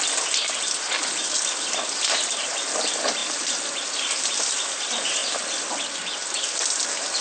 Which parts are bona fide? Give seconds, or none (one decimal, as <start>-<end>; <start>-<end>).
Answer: 0.0-7.2

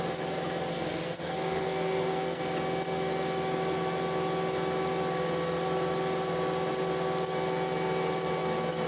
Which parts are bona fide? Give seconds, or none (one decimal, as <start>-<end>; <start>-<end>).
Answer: 0.0-0.7; 2.4-8.9